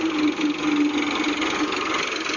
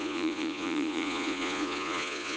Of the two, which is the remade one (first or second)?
second